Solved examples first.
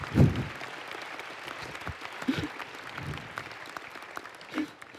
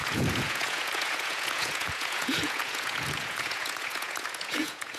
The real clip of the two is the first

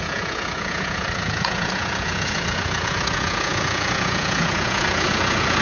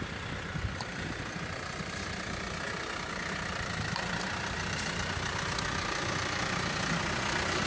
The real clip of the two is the second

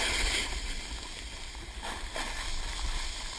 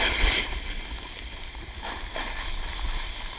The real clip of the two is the first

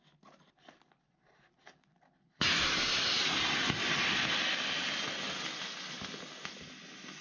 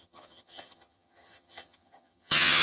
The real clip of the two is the first